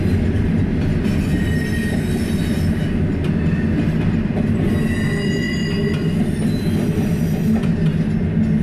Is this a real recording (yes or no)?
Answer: yes